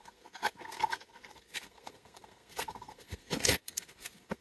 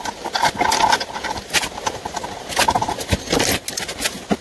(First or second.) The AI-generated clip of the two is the first